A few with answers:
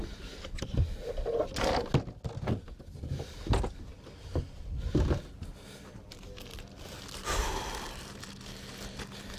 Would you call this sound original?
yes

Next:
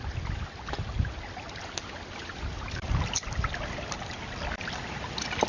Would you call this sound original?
yes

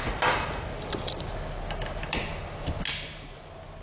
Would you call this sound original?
yes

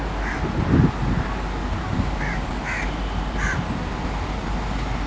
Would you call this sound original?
yes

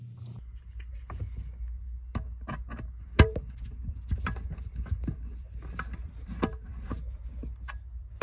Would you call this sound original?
yes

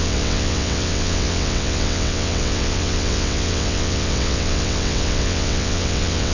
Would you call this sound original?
no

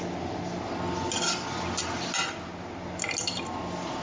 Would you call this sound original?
yes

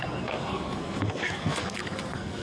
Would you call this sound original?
no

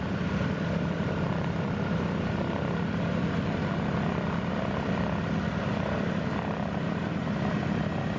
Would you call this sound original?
yes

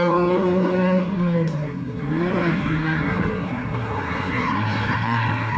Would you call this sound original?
no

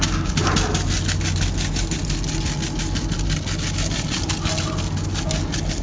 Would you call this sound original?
yes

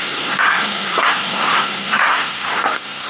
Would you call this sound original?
no